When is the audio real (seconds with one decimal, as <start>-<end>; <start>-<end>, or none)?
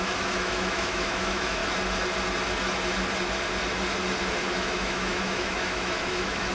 1.6-4.4